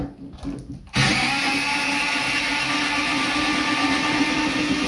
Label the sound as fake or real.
real